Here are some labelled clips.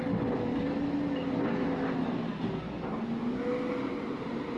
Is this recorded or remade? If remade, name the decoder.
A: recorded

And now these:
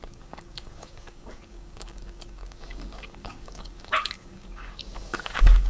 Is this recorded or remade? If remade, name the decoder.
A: remade, codec, DAC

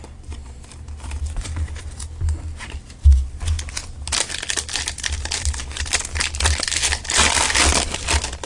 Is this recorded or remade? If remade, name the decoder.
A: recorded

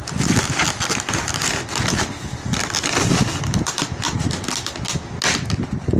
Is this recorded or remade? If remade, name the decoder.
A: recorded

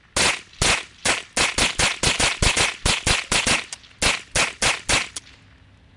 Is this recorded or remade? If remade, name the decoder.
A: recorded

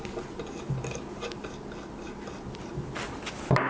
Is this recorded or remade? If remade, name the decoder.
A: recorded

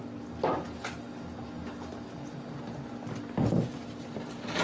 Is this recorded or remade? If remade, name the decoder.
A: recorded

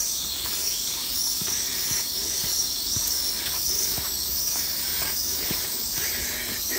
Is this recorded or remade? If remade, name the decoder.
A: remade, codec, DAC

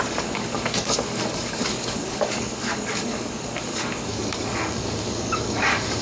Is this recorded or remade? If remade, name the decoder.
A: remade, codec, DAC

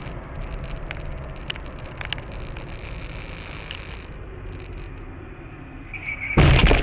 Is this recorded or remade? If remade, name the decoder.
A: recorded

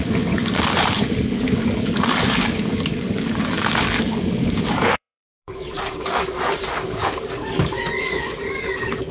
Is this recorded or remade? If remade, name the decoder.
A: remade, codec, DAC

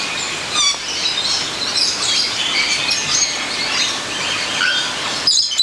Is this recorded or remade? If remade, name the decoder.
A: recorded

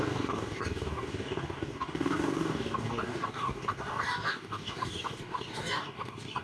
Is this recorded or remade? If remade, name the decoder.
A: remade, codec, DAC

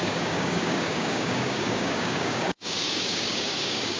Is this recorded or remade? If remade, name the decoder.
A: remade, codec, DAC